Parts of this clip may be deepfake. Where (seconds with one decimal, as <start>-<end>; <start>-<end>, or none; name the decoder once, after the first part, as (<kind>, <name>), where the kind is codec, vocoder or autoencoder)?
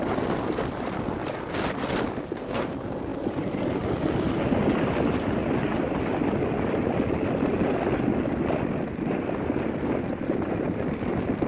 none